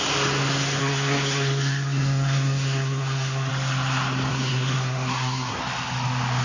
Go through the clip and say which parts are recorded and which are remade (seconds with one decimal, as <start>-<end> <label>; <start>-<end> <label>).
0.0-0.8 recorded; 0.8-3.5 remade; 3.5-4.3 recorded; 4.3-5.6 remade; 5.6-6.4 recorded